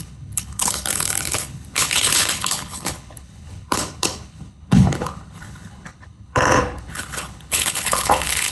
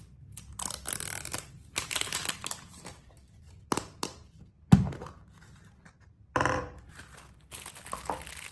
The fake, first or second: first